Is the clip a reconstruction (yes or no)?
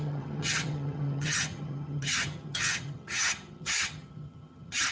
yes